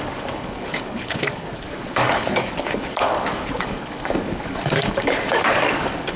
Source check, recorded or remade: remade